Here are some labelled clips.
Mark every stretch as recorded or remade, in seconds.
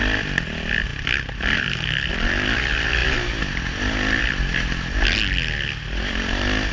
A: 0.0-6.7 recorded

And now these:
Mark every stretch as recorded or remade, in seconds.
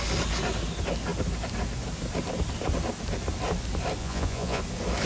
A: 0.0-4.0 recorded; 4.0-4.6 remade; 4.6-5.1 recorded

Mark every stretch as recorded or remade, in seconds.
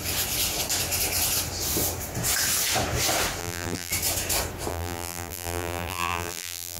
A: 0.0-3.4 recorded; 3.4-3.9 remade; 3.9-4.7 recorded; 4.7-6.8 remade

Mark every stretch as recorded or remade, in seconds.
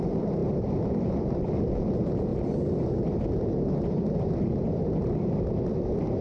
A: 0.0-2.3 remade; 2.3-6.2 recorded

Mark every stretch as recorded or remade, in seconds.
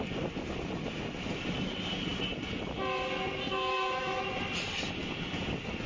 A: 0.0-3.5 recorded; 3.5-4.2 remade; 4.2-5.9 recorded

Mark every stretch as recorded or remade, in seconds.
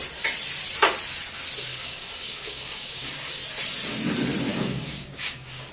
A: 0.0-1.7 recorded; 1.7-3.4 remade; 3.4-4.5 recorded; 4.5-5.7 remade